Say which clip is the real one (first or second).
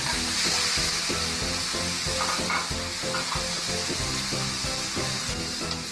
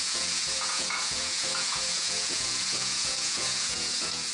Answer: first